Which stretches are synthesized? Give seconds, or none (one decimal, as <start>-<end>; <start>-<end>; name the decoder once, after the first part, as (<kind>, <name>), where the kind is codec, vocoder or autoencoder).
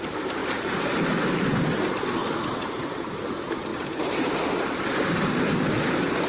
0.4-0.9 (vocoder, BigVGAN v2); 2.2-3.2; 3.7-4.3